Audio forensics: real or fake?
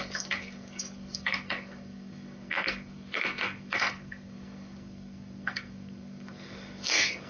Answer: fake